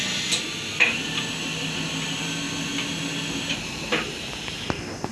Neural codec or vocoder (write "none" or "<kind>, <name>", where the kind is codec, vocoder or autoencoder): none